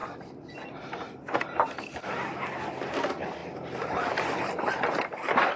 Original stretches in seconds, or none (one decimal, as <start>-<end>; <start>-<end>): 0.0-5.6